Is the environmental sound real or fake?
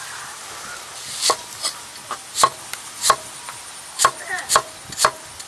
real